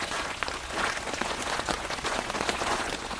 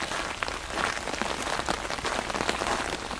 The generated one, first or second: first